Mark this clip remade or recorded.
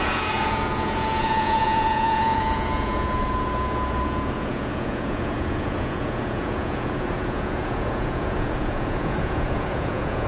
remade